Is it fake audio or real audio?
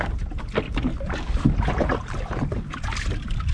real